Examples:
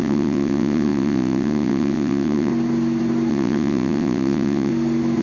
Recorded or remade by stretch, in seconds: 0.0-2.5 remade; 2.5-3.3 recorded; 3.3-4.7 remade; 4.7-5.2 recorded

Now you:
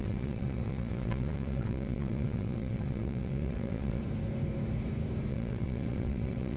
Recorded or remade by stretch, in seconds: 0.0-4.0 remade; 4.0-5.3 recorded; 5.3-6.6 remade

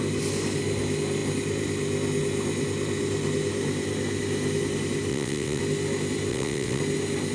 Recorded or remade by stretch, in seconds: 0.0-5.1 recorded; 5.1-5.6 remade; 5.6-6.3 recorded; 6.3-6.8 remade; 6.8-7.3 recorded